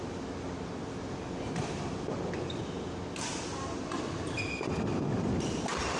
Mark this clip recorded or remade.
recorded